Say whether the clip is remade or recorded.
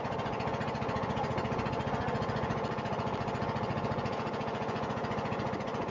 remade